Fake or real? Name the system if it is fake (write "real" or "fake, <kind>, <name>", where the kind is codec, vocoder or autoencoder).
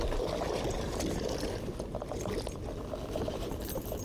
real